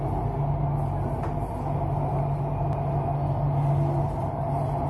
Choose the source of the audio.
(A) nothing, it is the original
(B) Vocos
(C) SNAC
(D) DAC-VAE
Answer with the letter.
A